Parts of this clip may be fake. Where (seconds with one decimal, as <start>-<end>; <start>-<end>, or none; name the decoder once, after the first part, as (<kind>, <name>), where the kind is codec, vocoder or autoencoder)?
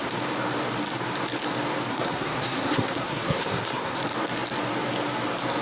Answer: 1.9-4.0 (codec, SNAC)